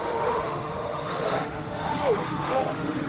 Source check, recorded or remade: remade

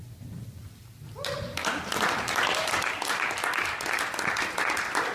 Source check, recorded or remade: recorded